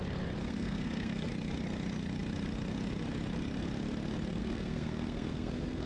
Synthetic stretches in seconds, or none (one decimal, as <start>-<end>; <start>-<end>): 0.4-1.3; 4.4-5.9